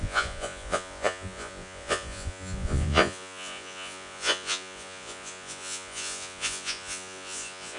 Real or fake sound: fake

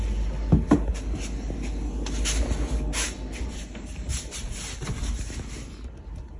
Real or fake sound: real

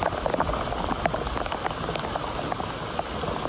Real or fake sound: real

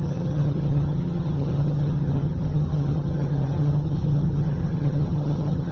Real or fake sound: fake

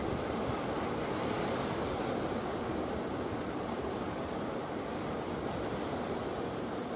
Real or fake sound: real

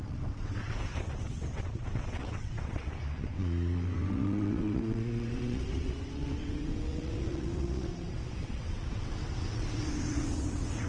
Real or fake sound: fake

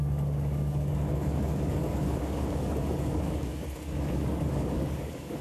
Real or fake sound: fake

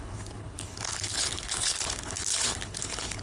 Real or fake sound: fake